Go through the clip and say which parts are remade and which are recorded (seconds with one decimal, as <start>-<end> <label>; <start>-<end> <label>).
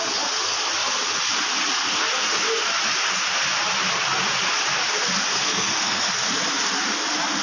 0.0-5.3 recorded; 5.3-6.1 remade; 6.1-7.4 recorded